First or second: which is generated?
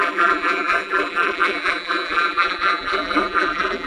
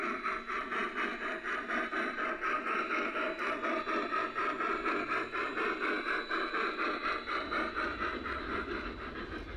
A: first